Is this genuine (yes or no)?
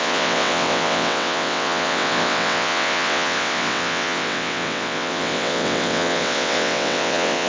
no